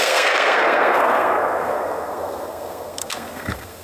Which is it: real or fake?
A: fake